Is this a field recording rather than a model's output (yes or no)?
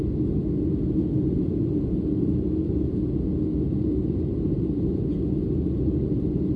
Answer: yes